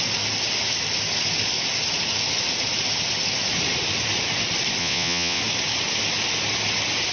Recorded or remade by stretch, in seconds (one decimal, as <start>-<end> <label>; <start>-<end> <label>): 0.0-4.8 recorded; 4.8-5.4 remade; 5.4-7.1 recorded